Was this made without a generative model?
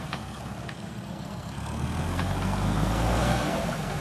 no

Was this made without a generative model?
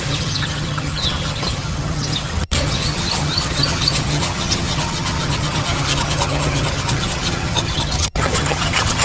no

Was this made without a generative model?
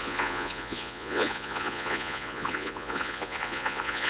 no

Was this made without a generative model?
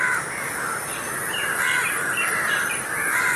yes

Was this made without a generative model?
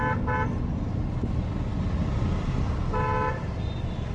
yes